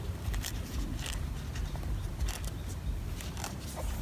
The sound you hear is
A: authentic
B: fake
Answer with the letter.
A